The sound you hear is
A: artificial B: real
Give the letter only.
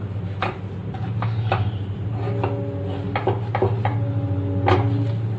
B